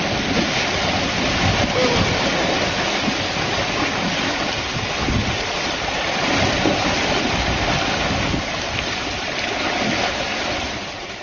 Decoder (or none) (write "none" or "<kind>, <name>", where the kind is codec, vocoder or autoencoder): vocoder, BigVGAN v2